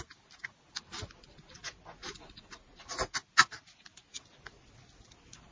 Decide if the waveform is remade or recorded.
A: recorded